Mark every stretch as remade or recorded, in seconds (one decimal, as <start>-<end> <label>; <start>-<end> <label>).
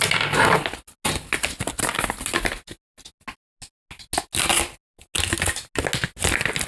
0.0-6.7 recorded